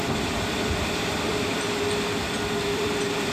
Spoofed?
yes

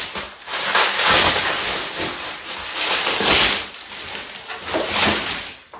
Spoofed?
no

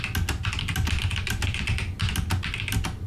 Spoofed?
no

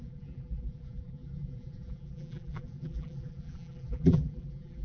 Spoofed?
yes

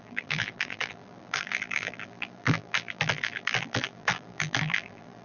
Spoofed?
yes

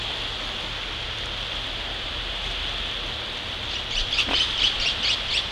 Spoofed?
no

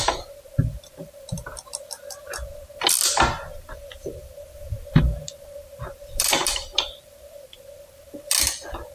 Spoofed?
yes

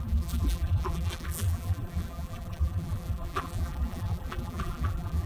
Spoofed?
yes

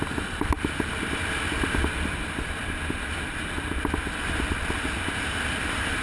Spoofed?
no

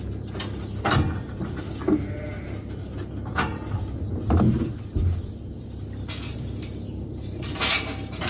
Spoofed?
no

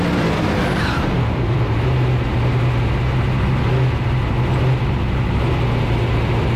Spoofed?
no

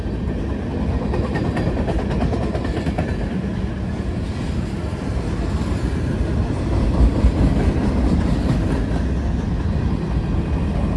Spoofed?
no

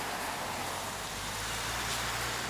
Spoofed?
yes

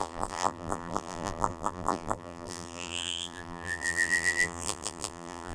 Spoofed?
yes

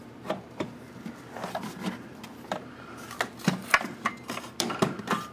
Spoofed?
yes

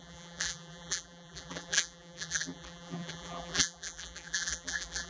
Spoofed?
yes